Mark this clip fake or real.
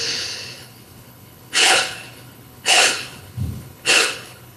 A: fake